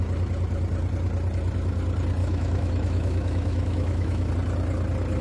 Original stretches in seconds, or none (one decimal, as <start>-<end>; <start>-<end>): 0.0-2.2; 4.3-5.2